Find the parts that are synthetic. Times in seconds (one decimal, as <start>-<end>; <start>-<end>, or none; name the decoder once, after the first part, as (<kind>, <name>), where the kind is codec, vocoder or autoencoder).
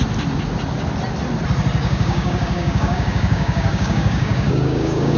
1.8-5.2 (codec, DAC)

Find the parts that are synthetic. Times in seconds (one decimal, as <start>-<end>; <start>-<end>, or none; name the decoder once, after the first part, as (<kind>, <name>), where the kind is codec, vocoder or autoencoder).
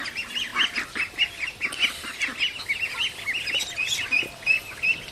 none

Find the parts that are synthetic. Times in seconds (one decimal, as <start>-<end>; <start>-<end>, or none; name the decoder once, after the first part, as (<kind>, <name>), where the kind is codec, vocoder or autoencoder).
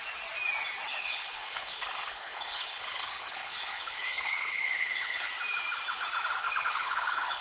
0.9-5.3 (codec, HILCodec); 6.4-7.4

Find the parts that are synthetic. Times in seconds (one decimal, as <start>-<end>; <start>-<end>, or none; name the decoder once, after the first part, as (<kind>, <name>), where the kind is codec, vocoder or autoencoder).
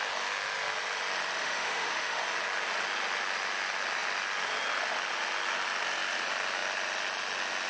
1.4-2.2 (autoencoder, DAC-VAE)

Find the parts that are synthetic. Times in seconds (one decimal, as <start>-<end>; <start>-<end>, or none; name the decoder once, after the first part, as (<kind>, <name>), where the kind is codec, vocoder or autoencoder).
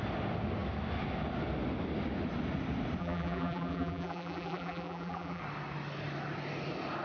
3.0-5.4 (vocoder, BigVGAN v2)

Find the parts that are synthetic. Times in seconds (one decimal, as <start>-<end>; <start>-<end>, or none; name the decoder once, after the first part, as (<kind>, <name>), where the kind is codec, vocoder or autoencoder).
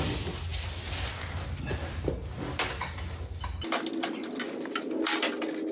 none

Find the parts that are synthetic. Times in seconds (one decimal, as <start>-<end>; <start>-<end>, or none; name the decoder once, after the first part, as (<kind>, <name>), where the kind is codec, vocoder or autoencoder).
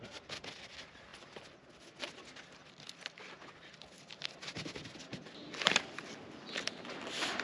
none